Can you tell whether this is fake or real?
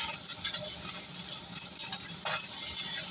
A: real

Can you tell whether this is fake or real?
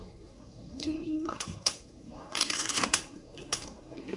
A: fake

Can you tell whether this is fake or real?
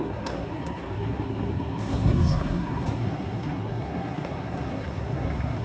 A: fake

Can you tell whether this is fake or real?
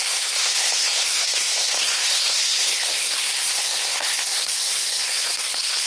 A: fake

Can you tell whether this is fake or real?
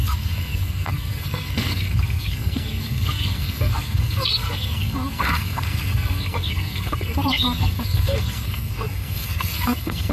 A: fake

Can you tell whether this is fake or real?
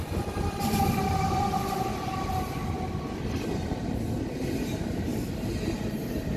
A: real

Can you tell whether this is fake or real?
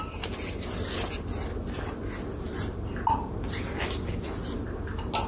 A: real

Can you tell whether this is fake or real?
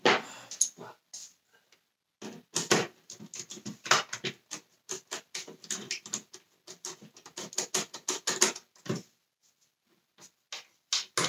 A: real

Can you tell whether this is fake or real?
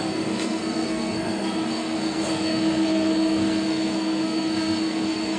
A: fake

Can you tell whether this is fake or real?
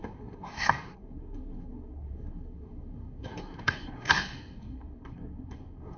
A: fake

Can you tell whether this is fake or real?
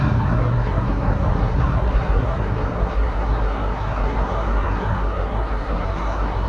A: fake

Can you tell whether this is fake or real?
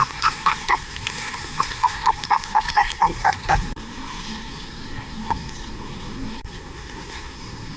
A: fake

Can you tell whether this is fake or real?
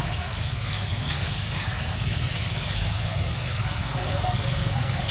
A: fake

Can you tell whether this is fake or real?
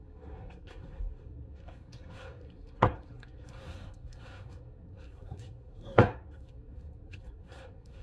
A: fake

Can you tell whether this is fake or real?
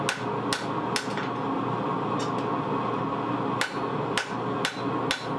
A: real